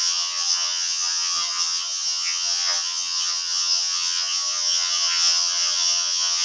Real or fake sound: fake